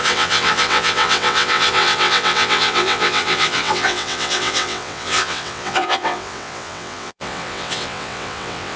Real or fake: fake